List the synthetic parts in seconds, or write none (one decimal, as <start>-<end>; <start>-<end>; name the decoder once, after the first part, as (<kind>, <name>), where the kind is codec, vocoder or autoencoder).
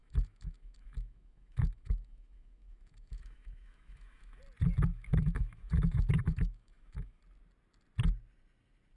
0.0-4.4 (autoencoder, DAC-VAE); 4.9-7.2